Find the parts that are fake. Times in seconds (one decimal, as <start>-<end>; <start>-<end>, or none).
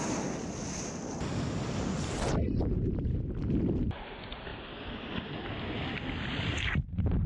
none